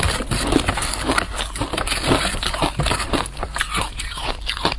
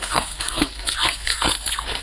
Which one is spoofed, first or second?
second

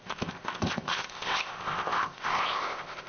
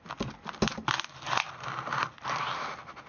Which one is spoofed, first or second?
first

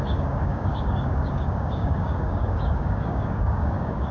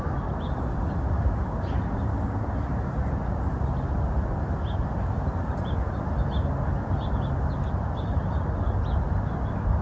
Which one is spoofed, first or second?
first